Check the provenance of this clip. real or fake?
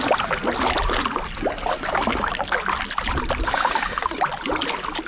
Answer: real